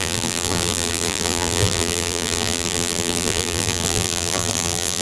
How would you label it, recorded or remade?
remade